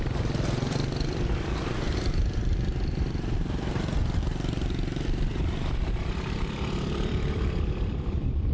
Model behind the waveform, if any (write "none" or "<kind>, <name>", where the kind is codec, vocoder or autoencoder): vocoder, BigVGAN v2